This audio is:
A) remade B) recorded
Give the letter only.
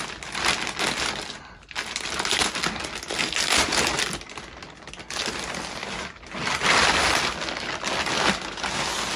B